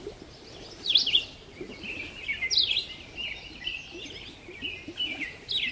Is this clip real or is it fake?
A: real